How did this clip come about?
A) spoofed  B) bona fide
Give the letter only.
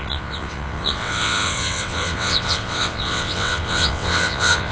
A